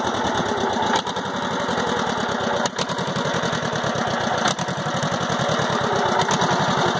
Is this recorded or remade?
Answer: recorded